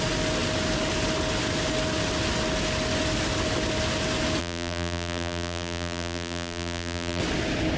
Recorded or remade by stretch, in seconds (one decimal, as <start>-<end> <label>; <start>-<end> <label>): 0.0-4.4 recorded; 4.4-7.2 remade; 7.2-7.8 recorded